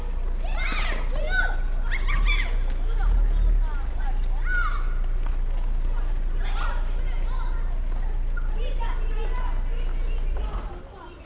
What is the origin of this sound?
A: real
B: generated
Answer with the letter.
A